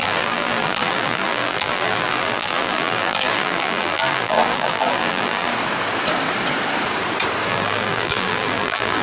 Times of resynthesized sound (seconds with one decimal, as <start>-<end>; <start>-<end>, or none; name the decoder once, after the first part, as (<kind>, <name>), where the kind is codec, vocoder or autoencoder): 0.0-5.5 (vocoder, BigVGAN v2); 7.5-9.0

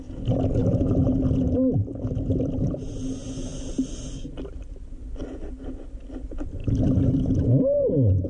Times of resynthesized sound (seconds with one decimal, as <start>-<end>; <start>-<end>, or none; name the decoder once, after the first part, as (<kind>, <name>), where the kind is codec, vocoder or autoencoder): none

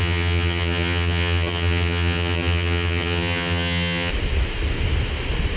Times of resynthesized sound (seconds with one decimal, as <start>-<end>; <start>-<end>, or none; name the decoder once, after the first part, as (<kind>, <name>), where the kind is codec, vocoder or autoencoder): 0.0-4.1 (vocoder, HiFi-GAN)